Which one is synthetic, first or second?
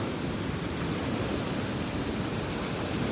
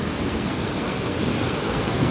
second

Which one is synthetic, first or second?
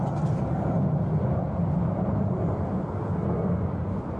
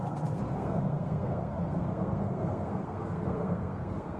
second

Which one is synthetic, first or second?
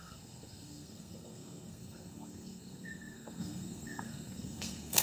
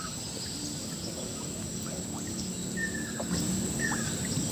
first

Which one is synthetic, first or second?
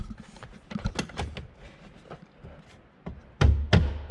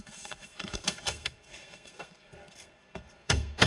second